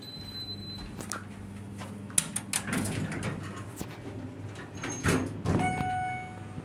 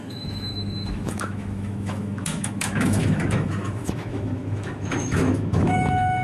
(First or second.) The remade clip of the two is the second